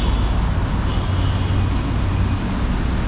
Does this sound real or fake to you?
real